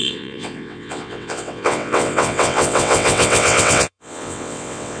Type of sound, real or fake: fake